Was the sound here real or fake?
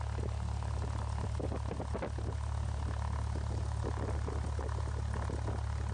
real